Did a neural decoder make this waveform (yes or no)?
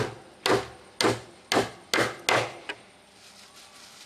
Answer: no